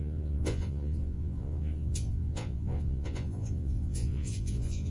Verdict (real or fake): fake